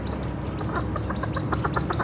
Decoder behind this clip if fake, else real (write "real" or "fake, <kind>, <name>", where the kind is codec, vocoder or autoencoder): real